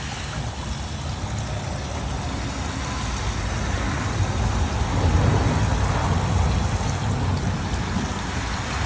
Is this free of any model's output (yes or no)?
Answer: yes